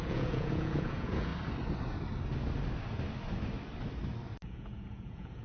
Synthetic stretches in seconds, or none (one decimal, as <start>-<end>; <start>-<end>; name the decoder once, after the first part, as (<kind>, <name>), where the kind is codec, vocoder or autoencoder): 0.0-1.3 (vocoder, Vocos); 4.5-5.4